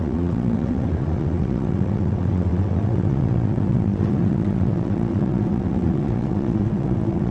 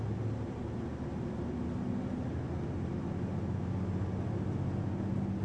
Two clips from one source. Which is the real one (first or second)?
second